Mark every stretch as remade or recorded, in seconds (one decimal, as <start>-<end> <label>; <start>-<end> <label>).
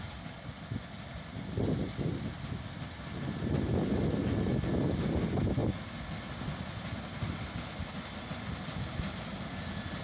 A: 0.0-10.0 recorded